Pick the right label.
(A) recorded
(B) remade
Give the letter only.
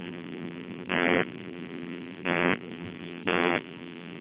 B